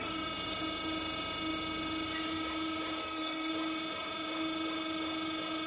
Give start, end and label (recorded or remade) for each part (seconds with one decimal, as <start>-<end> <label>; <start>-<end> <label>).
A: 0.0-3.0 recorded; 3.0-3.5 remade; 3.5-5.7 recorded